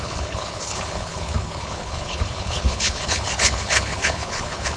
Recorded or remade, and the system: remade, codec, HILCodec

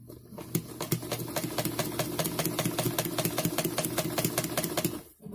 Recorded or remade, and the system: recorded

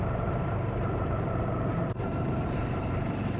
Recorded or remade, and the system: remade, vocoder, BigVGAN v2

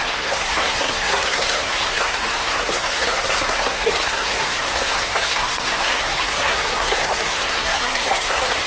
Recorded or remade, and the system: remade, codec, SNAC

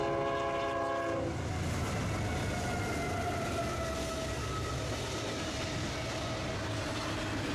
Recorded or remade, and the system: recorded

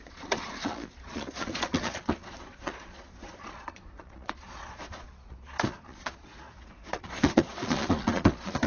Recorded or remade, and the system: remade, vocoder, Vocos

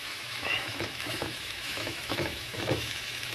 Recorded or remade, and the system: remade, autoencoder, DAC-VAE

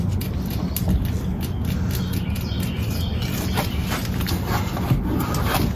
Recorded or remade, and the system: recorded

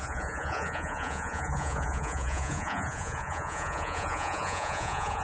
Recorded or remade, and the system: remade, vocoder, Vocos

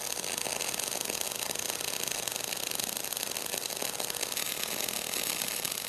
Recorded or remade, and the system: recorded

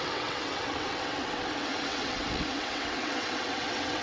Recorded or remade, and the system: remade, vocoder, WaveNeXt